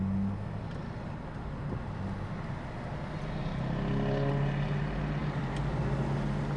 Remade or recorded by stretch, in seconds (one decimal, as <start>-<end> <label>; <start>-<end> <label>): 0.0-5.2 recorded; 5.2-5.8 remade; 5.8-6.6 recorded